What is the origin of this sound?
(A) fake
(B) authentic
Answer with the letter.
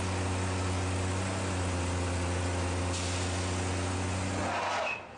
B